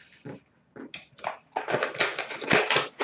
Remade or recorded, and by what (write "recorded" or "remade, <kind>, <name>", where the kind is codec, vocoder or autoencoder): recorded